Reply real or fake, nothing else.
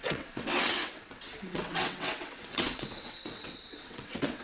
fake